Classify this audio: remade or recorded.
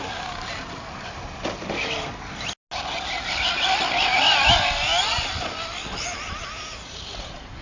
recorded